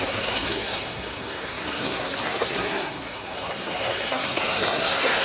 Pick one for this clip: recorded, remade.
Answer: remade